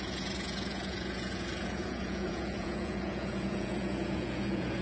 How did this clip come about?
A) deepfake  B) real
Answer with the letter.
A